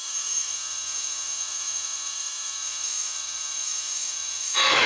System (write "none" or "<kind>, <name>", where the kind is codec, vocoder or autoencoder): autoencoder, DAC-VAE